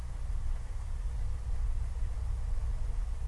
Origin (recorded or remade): recorded